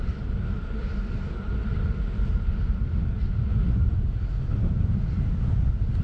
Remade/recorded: recorded